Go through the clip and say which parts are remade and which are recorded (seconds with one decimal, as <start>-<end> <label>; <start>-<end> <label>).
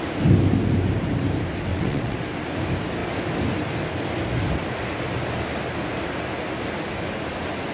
0.0-1.7 recorded; 1.7-2.2 remade; 2.2-7.7 recorded